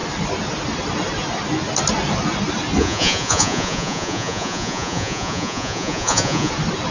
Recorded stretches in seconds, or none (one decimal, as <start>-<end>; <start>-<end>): 0.0-2.8; 6.5-6.9